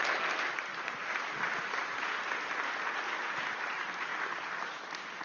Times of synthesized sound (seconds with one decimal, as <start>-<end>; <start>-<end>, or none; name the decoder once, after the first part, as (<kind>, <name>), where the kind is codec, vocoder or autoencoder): none